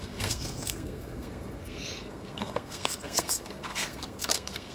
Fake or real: fake